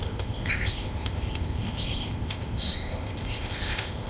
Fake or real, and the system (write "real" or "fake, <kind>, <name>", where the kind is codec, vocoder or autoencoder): fake, codec, ZipCodec